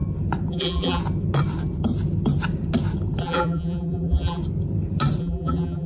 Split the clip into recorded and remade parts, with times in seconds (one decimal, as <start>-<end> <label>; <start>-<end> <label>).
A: 0.0-0.5 recorded; 0.5-1.0 remade; 1.0-3.2 recorded; 3.2-4.4 remade; 4.4-5.2 recorded; 5.2-5.9 remade